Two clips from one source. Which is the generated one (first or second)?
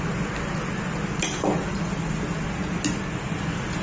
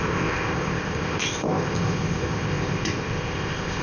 second